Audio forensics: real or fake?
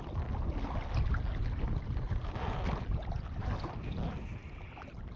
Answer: real